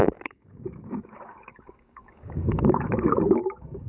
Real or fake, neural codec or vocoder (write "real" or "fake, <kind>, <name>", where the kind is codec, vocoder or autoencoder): fake, codec, DAC